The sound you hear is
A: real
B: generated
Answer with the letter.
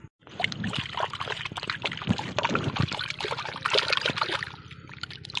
A